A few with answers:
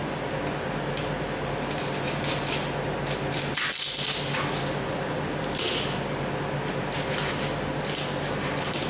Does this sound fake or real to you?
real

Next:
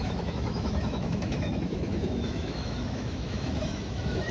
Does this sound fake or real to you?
fake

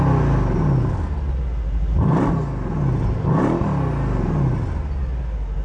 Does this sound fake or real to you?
real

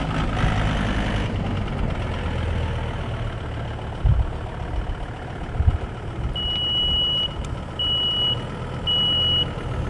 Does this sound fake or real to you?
real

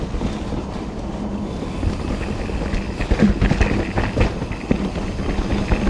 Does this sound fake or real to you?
real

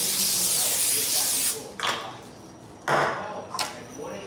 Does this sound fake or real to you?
real